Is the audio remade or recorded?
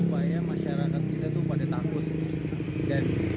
recorded